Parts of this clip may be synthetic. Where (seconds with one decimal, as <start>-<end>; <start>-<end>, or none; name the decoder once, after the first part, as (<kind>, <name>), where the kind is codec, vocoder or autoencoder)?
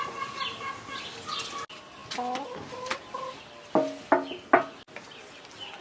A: none